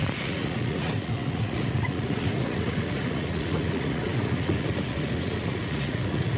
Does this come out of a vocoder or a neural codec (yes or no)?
yes